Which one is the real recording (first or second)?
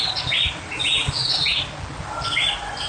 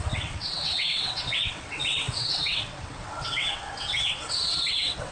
first